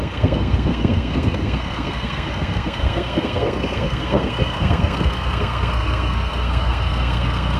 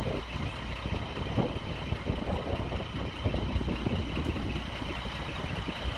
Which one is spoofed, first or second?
first